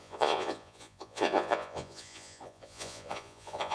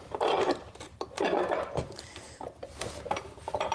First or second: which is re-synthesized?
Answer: first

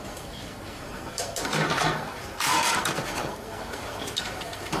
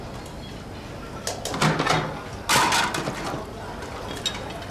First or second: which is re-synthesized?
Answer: first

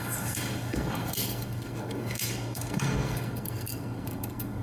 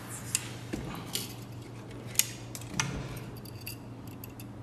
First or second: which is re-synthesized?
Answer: first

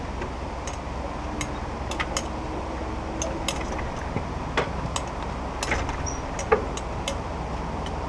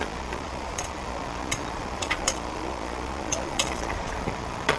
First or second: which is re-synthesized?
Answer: second